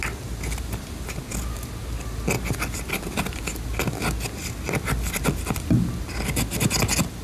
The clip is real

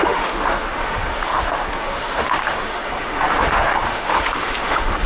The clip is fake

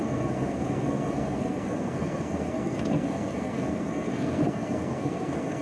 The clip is fake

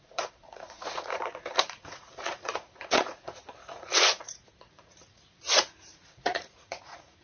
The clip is fake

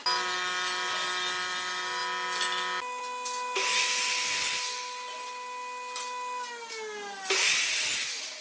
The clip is real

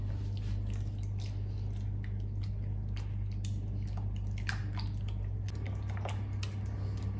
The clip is real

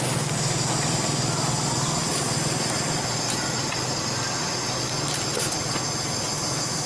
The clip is real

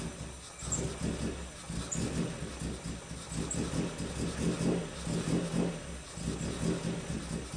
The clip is real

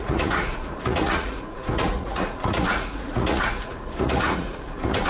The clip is fake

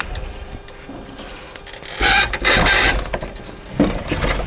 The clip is real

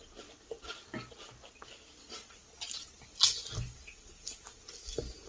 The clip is real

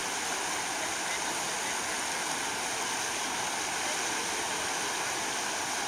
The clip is real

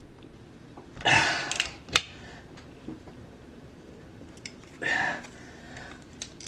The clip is fake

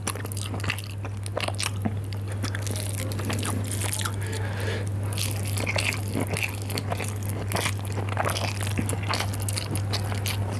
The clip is real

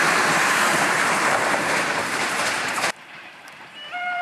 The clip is fake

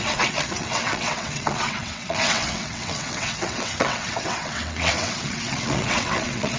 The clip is fake